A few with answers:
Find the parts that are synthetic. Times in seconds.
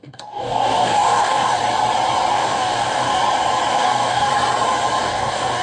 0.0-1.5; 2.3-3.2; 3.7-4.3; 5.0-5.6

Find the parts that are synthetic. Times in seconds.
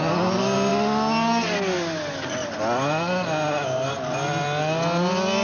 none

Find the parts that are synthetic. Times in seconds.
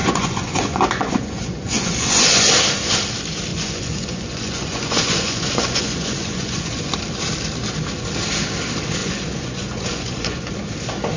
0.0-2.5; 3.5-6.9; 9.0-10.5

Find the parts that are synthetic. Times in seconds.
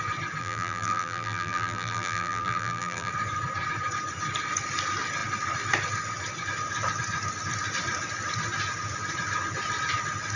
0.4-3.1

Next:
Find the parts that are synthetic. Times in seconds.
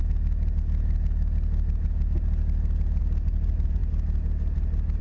3.0-3.8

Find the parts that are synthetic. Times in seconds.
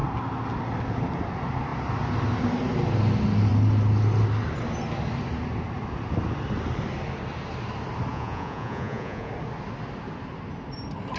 8.1-9.3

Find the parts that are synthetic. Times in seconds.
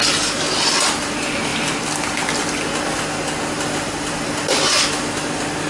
1.5-2.3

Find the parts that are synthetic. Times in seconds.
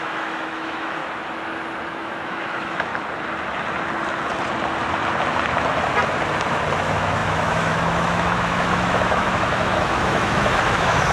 0.0-1.0; 1.9-2.9; 6.8-11.1